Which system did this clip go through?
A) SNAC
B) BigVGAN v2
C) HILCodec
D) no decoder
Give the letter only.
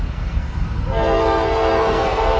A